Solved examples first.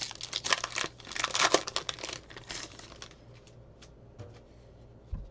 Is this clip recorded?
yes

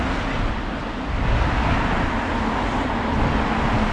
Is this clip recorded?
yes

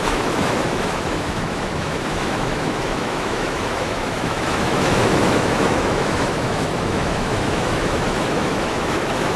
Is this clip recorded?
no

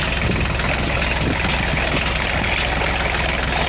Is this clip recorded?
yes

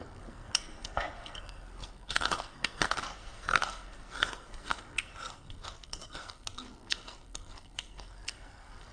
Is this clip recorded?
no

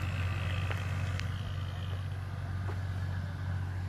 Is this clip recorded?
yes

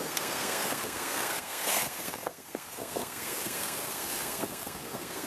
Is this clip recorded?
no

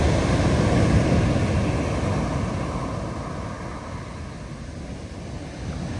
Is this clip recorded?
yes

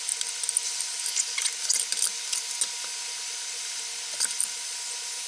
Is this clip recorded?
yes